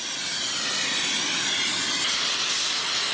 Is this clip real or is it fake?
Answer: real